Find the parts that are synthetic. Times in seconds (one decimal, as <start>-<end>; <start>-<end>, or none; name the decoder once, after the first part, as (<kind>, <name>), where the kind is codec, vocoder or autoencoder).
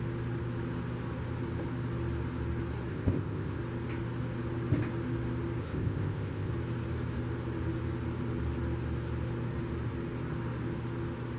2.9-3.6 (codec, ZipCodec); 5.6-6.5